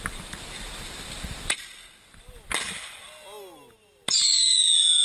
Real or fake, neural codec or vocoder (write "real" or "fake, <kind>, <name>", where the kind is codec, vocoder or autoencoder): real